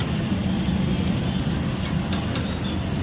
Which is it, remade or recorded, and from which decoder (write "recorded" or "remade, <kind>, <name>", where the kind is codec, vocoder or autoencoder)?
recorded